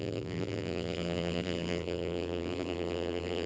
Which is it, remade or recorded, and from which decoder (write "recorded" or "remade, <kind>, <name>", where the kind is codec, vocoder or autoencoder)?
remade, vocoder, BigVGAN v2